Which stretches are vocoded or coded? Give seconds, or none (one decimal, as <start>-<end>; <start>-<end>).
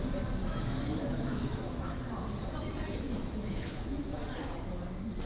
0.4-1.9; 3.2-4.2